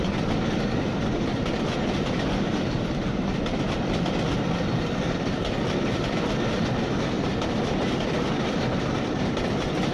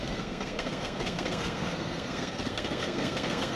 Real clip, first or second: first